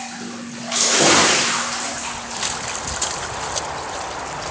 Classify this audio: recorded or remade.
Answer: recorded